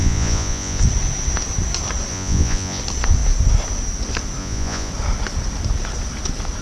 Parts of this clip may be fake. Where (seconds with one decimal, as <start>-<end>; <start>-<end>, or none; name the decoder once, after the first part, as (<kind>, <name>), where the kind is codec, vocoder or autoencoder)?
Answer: 0.0-0.8 (vocoder, Vocos); 2.1-2.8; 4.4-4.9